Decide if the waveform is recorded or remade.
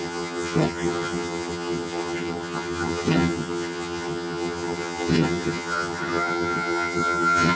remade